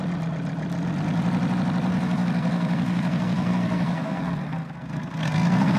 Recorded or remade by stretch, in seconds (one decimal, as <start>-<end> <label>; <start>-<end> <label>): 0.0-1.9 recorded; 1.9-5.8 remade